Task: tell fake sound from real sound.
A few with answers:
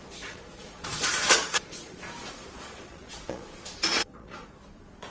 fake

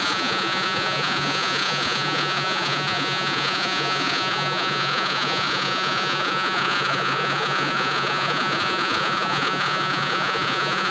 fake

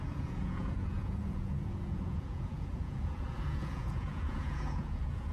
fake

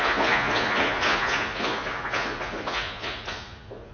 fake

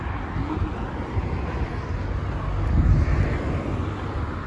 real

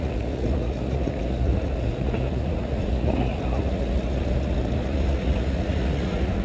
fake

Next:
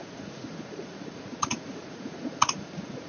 fake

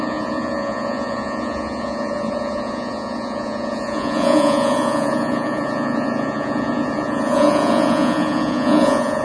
fake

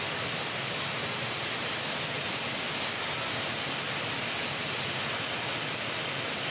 real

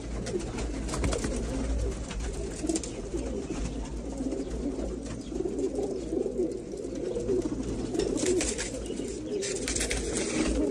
real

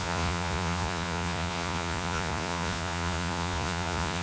fake